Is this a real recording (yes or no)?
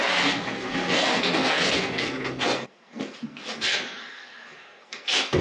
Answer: no